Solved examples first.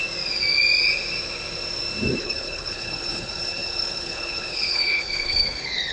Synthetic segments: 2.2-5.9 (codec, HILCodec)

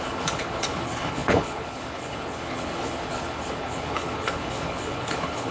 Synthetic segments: 0.0-5.5 (codec, HILCodec)

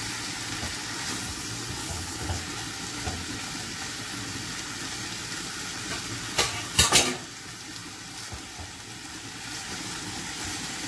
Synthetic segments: 1.8-2.4 (codec, HILCodec)

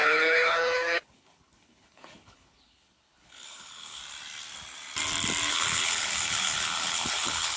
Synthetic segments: 0.0-4.0 (codec, HILCodec); 5.5-7.6